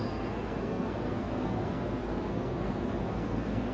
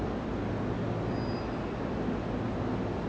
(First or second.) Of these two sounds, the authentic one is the second